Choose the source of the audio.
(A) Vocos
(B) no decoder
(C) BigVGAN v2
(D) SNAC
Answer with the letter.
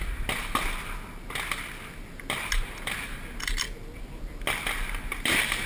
B